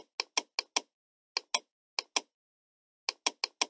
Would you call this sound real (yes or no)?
yes